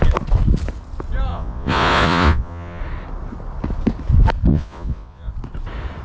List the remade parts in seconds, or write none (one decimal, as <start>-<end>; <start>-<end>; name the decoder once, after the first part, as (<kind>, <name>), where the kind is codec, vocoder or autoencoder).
1.3-2.8 (vocoder, Vocos); 4.5-5.3